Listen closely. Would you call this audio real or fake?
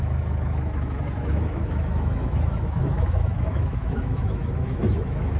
fake